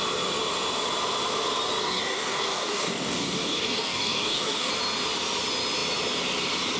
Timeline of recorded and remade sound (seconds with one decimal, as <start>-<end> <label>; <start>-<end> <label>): 0.0-1.8 recorded; 1.8-4.7 remade; 4.7-6.8 recorded